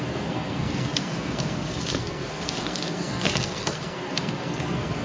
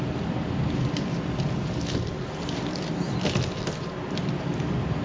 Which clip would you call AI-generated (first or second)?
first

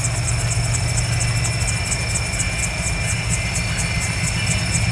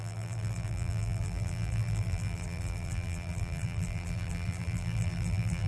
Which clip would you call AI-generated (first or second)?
second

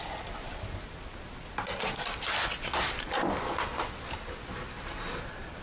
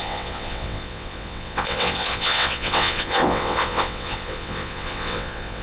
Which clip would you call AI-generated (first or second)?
second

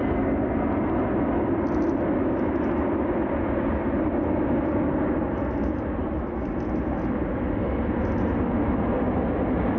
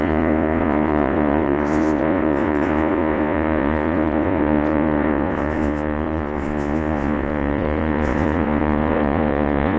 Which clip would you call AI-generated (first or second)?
second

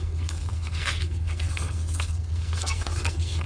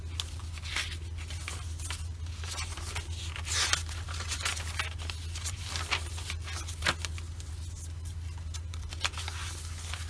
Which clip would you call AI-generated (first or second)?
first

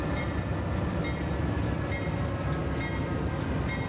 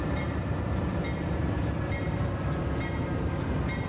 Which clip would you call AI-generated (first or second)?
second